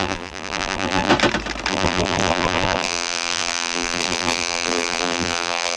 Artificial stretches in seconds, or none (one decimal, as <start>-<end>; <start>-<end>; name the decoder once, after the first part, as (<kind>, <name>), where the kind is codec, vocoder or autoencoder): 0.0-1.1 (vocoder, BigVGAN v2); 1.7-5.8